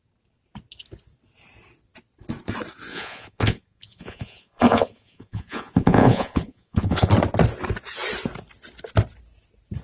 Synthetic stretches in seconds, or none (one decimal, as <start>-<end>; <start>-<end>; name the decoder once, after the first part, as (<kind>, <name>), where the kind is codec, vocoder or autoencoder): 2.9-7.1 (vocoder, Vocos)

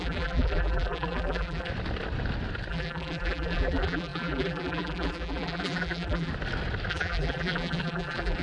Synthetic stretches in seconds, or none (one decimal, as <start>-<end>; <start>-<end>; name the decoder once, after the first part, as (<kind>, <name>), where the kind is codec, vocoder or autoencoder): 0.0-1.7 (vocoder, BigVGAN v2); 2.7-6.3; 6.9-8.4

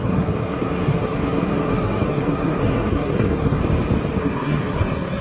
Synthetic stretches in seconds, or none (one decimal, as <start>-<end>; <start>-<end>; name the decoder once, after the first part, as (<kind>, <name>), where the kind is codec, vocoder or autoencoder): 0.0-3.6 (codec, SNAC); 4.2-5.2

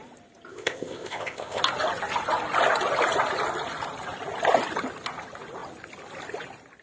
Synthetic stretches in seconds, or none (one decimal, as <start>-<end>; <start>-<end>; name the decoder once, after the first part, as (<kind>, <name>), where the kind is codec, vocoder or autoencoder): 0.5-1.6 (codec, ZipCodec)

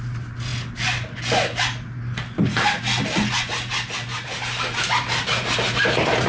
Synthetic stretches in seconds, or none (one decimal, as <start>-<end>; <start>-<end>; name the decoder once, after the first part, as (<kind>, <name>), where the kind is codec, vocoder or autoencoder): none